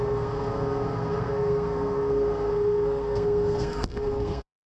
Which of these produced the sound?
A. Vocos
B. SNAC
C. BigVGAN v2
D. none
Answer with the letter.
B